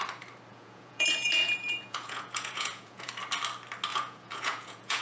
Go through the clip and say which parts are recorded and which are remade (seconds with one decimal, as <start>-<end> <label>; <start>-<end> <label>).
0.0-0.5 recorded; 0.5-3.1 remade; 3.1-3.9 recorded; 3.9-5.0 remade